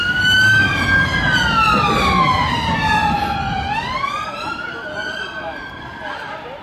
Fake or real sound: real